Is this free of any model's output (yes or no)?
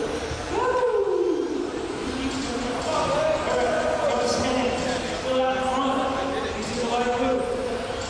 yes